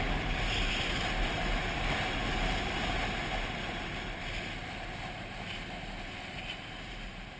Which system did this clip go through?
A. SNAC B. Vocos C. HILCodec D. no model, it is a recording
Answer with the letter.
D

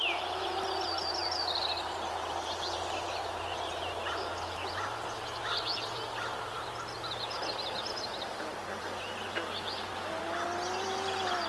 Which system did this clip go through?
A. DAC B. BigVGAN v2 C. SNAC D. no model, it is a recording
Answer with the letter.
D